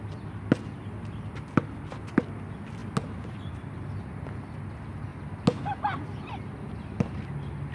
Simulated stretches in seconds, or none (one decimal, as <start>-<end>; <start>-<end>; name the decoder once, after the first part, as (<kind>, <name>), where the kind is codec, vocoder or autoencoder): none